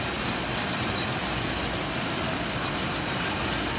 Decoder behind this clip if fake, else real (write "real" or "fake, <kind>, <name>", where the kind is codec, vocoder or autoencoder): real